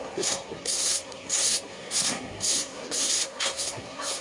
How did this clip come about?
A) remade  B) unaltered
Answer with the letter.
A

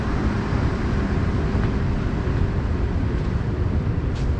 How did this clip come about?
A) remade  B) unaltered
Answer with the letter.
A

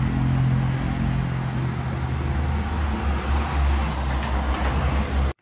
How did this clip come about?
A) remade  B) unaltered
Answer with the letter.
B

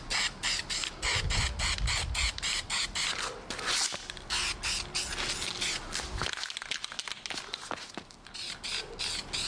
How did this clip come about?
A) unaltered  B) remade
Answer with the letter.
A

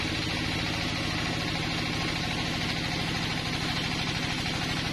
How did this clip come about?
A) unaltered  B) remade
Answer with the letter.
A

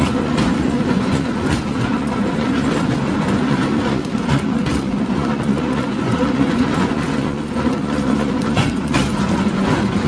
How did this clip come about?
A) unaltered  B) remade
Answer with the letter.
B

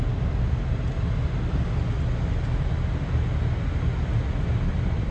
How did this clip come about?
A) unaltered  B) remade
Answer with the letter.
A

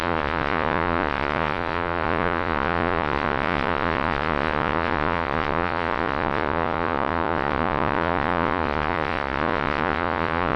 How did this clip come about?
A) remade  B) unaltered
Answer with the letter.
A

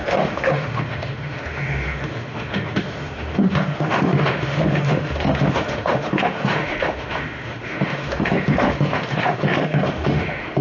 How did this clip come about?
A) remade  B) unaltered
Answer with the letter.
A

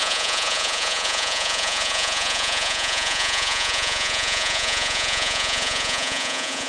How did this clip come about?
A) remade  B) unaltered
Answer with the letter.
A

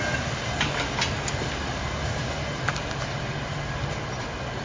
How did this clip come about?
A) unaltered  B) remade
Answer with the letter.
A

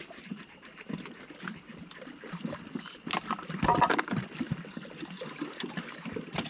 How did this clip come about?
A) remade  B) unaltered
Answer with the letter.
B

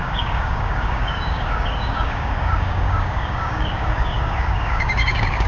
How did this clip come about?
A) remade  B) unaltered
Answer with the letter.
A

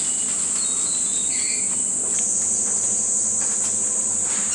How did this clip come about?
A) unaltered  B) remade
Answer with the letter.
A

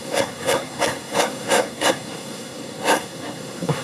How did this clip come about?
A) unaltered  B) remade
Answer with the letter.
B